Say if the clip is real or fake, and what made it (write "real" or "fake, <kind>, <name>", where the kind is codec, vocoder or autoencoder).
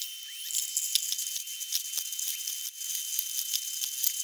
real